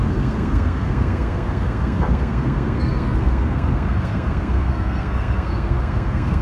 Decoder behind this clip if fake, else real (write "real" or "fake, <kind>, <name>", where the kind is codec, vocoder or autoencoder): fake, codec, SNAC